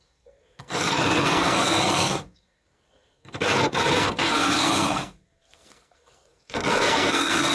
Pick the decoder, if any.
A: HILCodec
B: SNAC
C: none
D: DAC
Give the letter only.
B